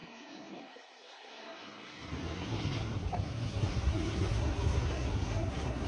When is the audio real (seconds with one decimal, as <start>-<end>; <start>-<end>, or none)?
none